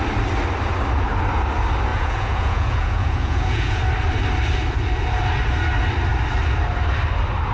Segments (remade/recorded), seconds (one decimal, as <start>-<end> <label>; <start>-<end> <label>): 0.0-1.9 recorded; 1.9-3.8 remade; 3.8-7.5 recorded

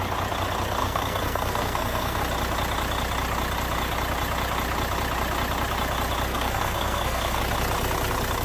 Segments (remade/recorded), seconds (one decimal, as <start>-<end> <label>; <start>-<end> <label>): 0.0-0.8 recorded; 0.8-2.2 remade; 2.2-6.3 recorded; 6.3-7.4 remade; 7.4-8.4 recorded

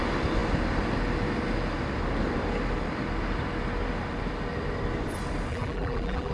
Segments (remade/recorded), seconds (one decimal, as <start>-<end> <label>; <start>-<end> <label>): 0.0-5.5 recorded; 5.5-6.3 remade

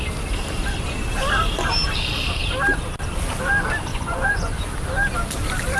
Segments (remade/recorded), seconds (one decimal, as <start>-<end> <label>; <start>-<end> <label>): 0.0-3.9 recorded; 3.9-4.5 remade; 4.5-5.8 recorded

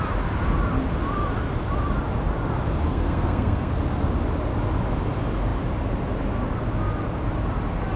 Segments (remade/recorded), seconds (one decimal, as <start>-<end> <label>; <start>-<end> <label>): 0.0-2.9 recorded; 2.9-3.7 remade; 3.7-8.0 recorded

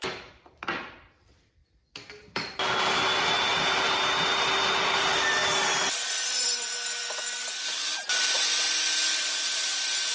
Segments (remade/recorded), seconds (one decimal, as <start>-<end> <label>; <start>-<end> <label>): 0.0-5.4 remade; 5.4-9.5 recorded; 9.5-10.1 remade

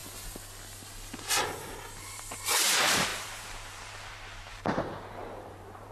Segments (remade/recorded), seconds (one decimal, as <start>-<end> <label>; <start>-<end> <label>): 0.0-2.1 recorded; 2.1-5.9 remade